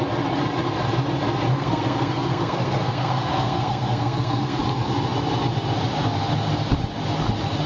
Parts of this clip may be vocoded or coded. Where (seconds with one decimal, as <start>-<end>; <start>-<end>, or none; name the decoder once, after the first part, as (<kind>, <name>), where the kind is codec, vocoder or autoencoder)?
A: 1.5-4.6 (codec, SNAC)